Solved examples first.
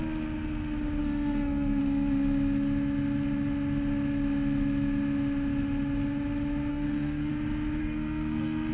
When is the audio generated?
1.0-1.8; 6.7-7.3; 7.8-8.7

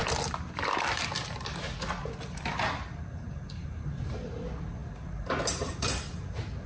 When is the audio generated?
none

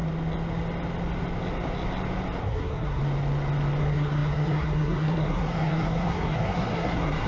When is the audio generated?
2.4-3.0; 3.8-7.3

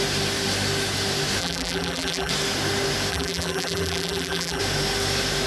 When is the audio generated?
1.4-2.3; 3.1-4.6

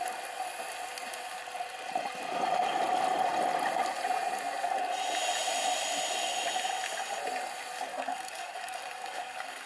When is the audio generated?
7.9-9.7